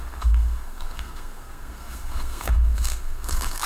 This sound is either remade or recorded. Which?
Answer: remade